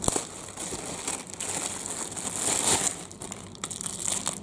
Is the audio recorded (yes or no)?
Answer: yes